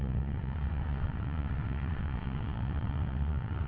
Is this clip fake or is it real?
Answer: fake